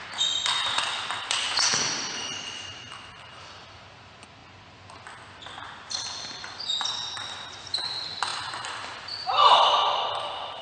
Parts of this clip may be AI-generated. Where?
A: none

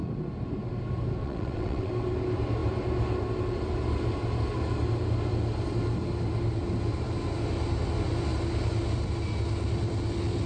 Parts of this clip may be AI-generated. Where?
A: 1.2-1.9 (vocoder, WaveNeXt)

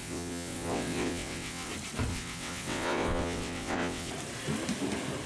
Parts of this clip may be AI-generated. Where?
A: 0.0-1.7 (vocoder, WaveNeXt); 2.1-4.1